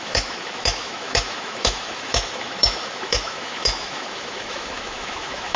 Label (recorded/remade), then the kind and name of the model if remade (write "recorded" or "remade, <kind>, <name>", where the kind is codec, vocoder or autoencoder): remade, autoencoder, DAC-VAE